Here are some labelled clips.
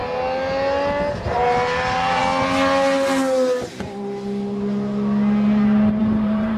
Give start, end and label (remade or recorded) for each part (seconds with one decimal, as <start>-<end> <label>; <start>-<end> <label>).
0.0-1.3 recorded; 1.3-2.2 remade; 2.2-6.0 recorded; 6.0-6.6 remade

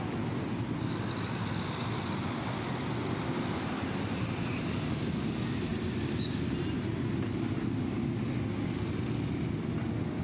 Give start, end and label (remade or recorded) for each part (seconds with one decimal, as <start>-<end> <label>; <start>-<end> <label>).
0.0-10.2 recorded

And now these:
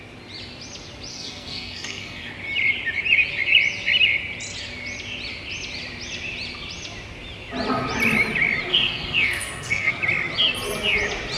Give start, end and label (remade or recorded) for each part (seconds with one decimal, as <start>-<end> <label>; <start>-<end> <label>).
0.0-1.1 recorded; 1.1-2.3 remade; 2.3-8.7 recorded; 8.7-9.9 remade; 9.9-11.4 recorded

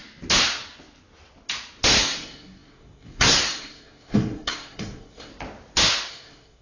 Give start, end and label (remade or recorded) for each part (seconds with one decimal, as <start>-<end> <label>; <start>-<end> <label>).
0.0-2.0 recorded; 2.0-5.3 remade; 5.3-6.1 recorded; 6.1-6.6 remade

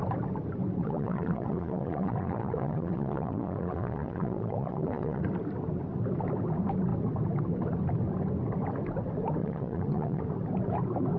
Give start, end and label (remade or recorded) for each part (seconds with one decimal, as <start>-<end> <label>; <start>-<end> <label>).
0.0-0.8 recorded; 0.8-5.2 remade; 5.2-9.4 recorded; 9.4-10.2 remade; 10.2-11.2 recorded